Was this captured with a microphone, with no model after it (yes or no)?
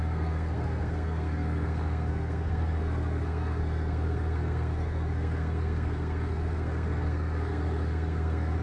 no